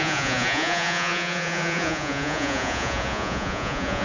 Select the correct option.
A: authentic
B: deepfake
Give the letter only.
B